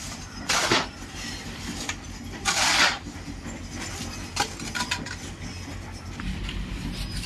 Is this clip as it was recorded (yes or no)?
yes